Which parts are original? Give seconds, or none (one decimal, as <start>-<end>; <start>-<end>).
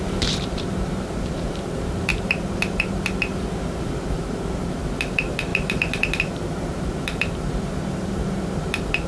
none